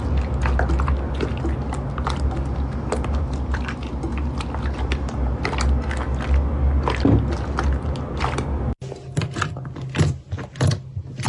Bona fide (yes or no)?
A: yes